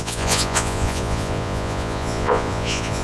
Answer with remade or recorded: remade